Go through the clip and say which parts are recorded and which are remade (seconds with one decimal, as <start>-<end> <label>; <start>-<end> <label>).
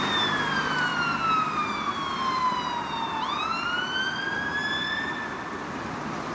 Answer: 0.0-6.3 recorded